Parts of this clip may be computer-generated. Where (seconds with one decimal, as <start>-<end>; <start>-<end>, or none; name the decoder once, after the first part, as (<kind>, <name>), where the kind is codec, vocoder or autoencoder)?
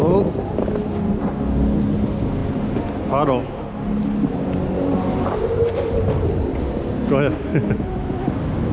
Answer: 4.9-6.0 (vocoder, BigVGAN v2); 7.5-8.0